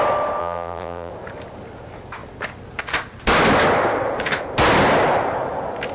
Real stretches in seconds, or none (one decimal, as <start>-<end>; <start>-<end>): 0.0-0.4; 1.1-5.9